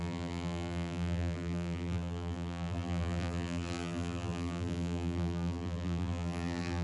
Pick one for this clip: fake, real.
fake